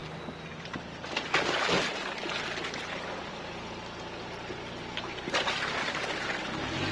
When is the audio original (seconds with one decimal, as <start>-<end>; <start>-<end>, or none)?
0.0-6.9